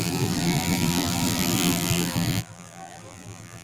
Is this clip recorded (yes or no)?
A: no